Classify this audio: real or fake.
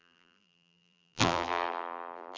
fake